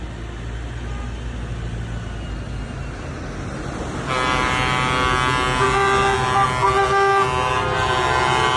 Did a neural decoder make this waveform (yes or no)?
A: no